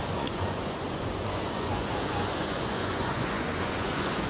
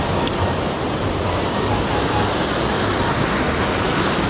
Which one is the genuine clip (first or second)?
second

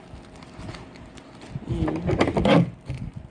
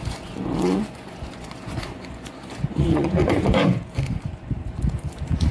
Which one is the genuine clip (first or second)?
first